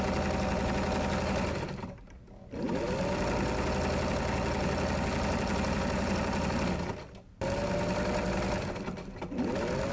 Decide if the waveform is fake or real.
real